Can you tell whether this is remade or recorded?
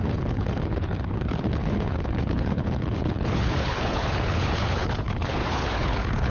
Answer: remade